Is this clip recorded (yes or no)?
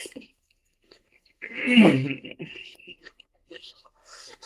no